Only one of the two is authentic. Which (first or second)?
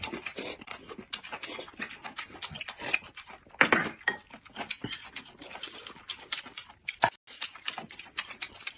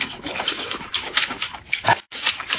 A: first